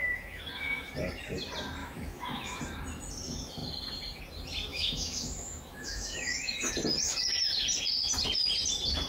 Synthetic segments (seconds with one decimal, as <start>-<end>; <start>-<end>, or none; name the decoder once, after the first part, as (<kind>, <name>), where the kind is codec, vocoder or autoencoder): 0.0-0.9 (autoencoder, DAC-VAE); 1.8-2.6; 4.7-6.7